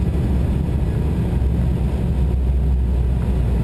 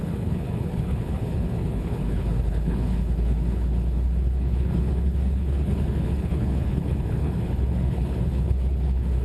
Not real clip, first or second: second